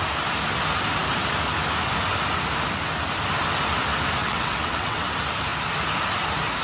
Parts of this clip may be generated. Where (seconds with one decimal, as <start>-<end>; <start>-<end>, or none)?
4.2-5.1